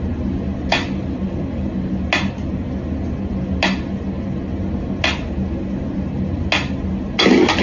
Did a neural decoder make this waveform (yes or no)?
no